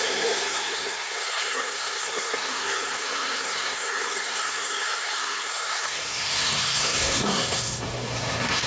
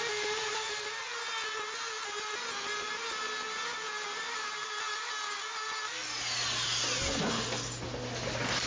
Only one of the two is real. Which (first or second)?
second